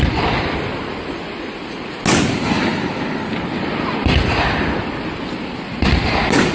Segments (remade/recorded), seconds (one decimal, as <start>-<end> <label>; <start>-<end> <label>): 0.0-6.5 recorded